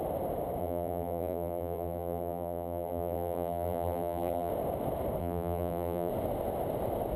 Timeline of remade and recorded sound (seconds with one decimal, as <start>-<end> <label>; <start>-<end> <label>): 0.0-0.6 recorded; 0.6-4.5 remade; 4.5-5.2 recorded; 5.2-6.1 remade; 6.1-7.2 recorded